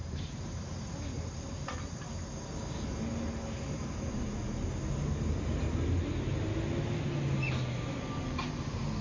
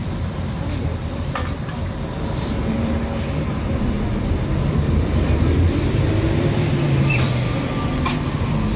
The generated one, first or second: second